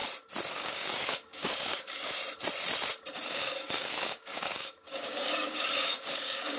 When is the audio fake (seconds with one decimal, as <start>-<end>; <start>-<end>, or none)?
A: 0.5-2.2; 3.3-6.6